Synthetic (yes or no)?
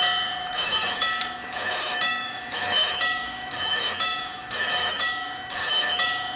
yes